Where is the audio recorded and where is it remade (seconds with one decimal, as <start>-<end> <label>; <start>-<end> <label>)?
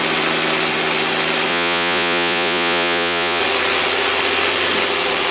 0.0-1.5 recorded; 1.5-3.4 remade; 3.4-5.3 recorded